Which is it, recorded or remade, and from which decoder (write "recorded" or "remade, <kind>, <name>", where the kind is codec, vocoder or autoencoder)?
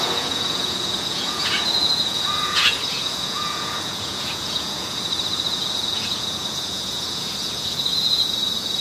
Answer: remade, vocoder, Vocos